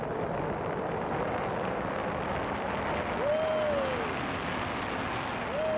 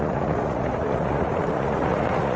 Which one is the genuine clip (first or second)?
first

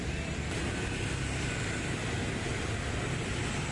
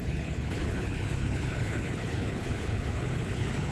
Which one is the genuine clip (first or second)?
first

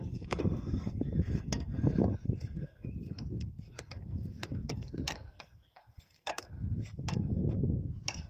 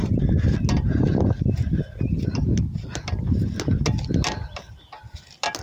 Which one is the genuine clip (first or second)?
second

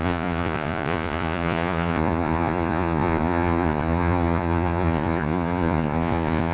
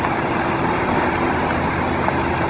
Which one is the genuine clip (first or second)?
second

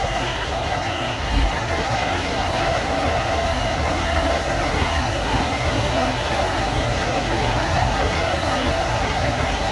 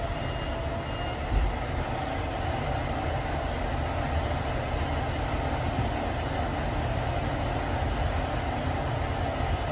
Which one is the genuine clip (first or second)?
second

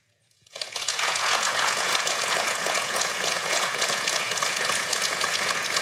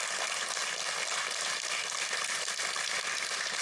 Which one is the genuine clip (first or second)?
second